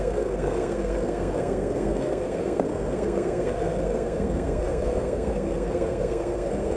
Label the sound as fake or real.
fake